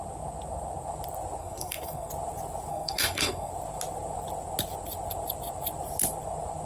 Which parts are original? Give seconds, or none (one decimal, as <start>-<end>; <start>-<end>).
0.0-1.4; 2.1-2.7; 3.5-6.7

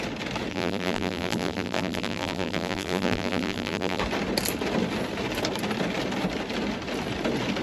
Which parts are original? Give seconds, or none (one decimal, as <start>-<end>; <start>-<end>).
0.0-0.5; 4.0-7.6

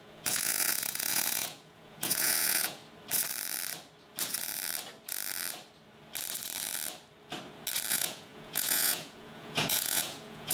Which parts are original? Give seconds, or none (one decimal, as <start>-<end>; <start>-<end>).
2.8-7.9